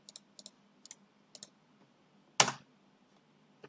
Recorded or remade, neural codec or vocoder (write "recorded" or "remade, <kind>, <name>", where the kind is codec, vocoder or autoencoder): recorded